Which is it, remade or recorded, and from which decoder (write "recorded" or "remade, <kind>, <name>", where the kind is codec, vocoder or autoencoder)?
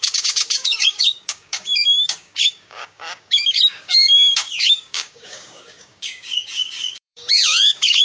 remade, codec, DAC